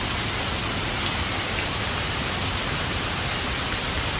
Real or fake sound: real